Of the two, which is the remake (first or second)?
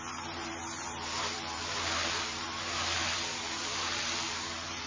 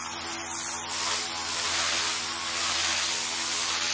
first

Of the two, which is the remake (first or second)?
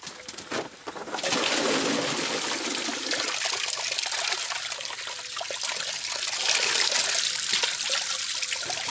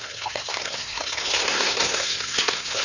second